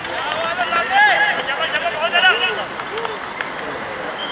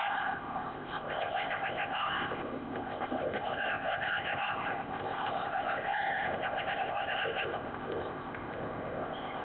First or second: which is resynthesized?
second